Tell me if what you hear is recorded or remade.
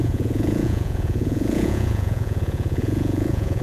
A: remade